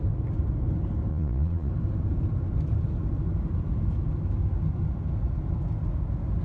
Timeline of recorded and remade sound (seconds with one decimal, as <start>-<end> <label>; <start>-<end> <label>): 0.0-1.1 recorded; 1.1-1.7 remade; 1.7-6.4 recorded